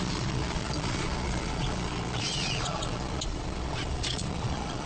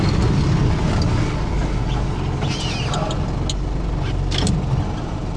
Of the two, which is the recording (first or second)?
second